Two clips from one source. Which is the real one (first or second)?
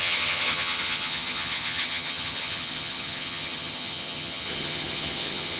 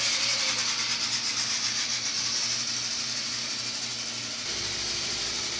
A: second